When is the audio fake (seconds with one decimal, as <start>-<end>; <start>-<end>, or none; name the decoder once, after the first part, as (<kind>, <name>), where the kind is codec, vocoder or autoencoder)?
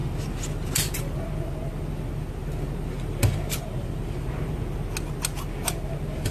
none